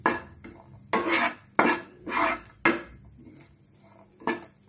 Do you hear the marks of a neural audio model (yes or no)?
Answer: no